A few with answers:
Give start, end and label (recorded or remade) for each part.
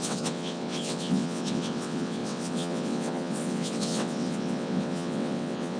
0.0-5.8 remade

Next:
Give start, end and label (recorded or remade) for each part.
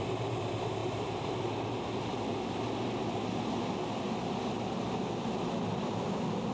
0.0-6.5 recorded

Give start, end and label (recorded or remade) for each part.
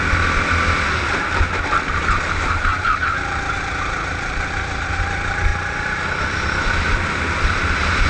0.0-8.1 recorded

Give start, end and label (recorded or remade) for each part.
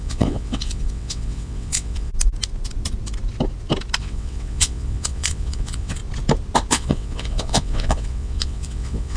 0.0-2.1 remade; 2.1-4.0 recorded; 4.0-6.0 remade; 6.0-6.7 recorded; 6.7-9.2 remade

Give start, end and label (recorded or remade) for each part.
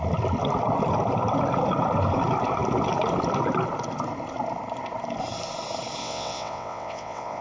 0.0-6.0 recorded; 6.0-7.4 remade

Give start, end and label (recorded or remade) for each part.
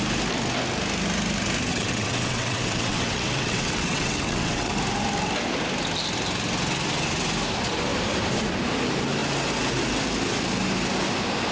0.0-1.7 recorded; 1.7-4.7 remade; 4.7-11.5 recorded